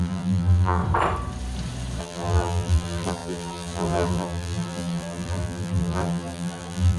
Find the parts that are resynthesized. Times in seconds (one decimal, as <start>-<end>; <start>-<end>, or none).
0.0-0.8; 2.0-7.0